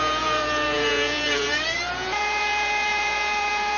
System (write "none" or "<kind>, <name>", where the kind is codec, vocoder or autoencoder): vocoder, Vocos